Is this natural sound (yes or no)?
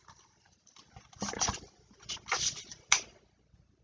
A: yes